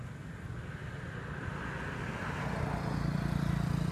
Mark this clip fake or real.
real